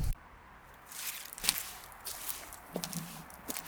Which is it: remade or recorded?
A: recorded